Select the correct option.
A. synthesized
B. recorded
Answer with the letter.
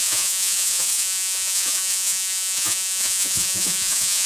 A